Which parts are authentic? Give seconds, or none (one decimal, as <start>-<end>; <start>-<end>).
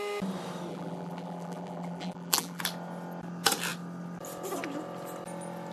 0.0-0.7; 2.6-5.7